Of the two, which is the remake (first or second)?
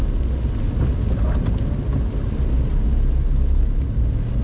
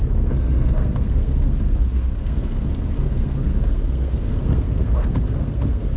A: second